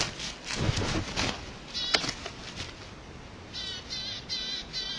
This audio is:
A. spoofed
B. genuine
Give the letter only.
B